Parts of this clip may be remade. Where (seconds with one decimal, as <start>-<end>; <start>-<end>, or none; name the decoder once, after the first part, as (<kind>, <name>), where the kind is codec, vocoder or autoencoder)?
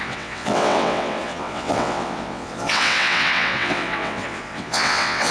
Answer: 0.0-5.3 (vocoder, WaveNeXt)